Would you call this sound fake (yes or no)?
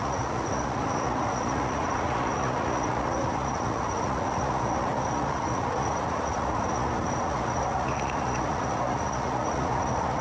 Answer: yes